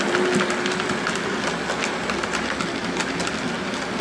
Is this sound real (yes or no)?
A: yes